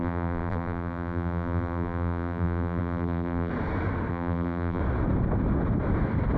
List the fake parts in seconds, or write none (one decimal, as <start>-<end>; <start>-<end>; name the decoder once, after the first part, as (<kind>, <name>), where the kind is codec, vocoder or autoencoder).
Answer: 0.0-3.5 (vocoder, BigVGAN v2); 4.1-4.8